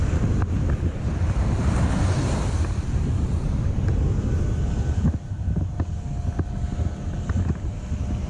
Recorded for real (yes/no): yes